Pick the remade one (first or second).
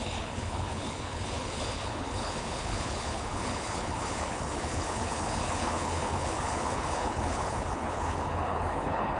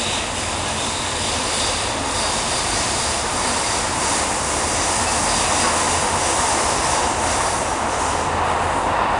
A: first